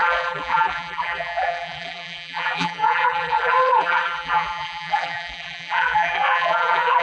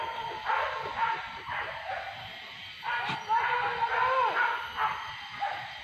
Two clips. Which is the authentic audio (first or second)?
second